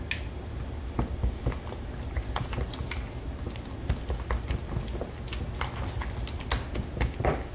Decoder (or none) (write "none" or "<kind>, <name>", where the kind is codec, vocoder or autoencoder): none